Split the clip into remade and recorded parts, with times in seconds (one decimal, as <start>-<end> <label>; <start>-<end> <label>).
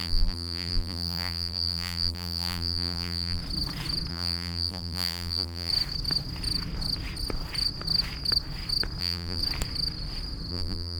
0.0-3.4 remade; 3.4-4.1 recorded; 4.1-5.7 remade; 5.7-9.0 recorded; 9.0-9.4 remade; 9.4-10.5 recorded; 10.5-11.0 remade